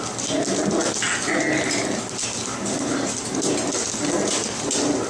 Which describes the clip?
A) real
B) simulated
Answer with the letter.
A